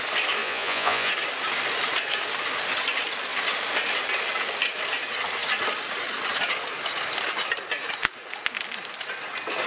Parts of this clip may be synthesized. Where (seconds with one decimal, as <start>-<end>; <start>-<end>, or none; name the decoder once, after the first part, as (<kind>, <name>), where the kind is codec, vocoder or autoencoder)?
0.4-1.1 (vocoder, Vocos)